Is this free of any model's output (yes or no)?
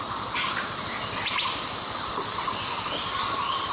yes